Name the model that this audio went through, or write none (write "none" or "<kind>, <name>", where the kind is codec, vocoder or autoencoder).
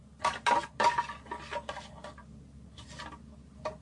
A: none